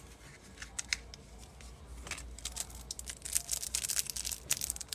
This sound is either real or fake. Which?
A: real